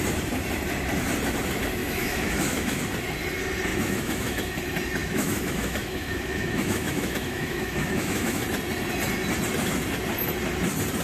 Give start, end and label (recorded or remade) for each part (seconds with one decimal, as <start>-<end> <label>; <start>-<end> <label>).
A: 0.0-1.8 recorded; 1.8-2.8 remade; 2.8-3.7 recorded; 3.7-4.5 remade; 4.5-5.0 recorded; 5.0-8.4 remade; 8.4-11.0 recorded